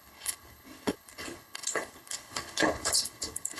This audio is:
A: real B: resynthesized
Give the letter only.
B